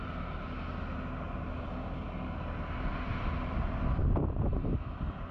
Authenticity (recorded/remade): recorded